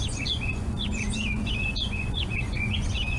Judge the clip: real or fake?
fake